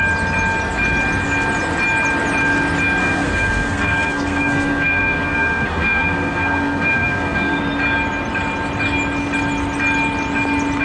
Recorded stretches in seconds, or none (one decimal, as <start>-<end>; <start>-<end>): 0.0-3.0; 7.6-10.8